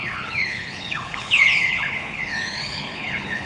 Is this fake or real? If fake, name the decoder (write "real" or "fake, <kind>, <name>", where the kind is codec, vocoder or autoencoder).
fake, codec, HILCodec